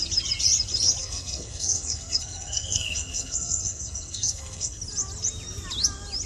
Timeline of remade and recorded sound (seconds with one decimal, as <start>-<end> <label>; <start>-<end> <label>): 0.0-1.0 recorded; 1.0-4.8 remade; 4.8-6.3 recorded